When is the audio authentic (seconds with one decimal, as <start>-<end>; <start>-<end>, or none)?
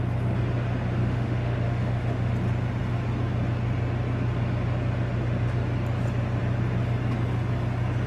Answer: 0.0-1.0; 2.3-8.1